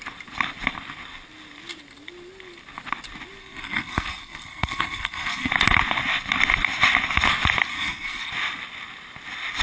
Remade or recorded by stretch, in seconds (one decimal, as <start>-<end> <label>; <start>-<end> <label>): 0.0-3.4 recorded; 3.4-5.5 remade; 5.5-7.7 recorded; 7.7-8.3 remade; 8.3-9.6 recorded